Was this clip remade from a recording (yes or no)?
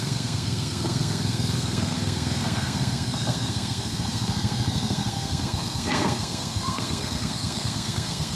yes